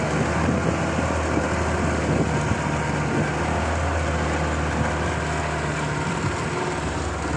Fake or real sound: real